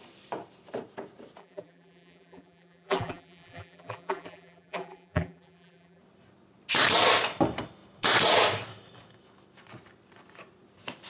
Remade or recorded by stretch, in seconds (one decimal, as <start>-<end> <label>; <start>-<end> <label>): 0.0-1.4 recorded; 1.4-6.0 remade; 6.0-11.1 recorded